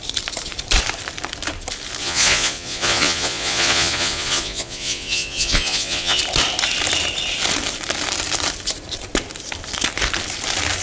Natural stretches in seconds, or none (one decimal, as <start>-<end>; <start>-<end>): 0.0-2.0; 6.2-10.8